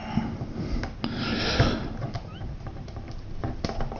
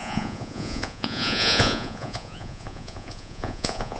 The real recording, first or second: first